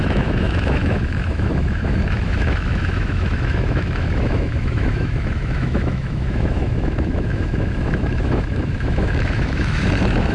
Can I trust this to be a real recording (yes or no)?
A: no